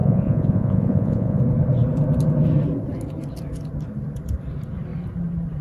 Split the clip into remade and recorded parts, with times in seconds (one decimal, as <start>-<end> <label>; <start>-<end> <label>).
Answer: 0.0-1.4 remade; 1.4-5.6 recorded